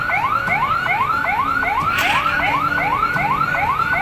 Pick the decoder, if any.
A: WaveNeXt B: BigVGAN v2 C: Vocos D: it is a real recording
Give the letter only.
D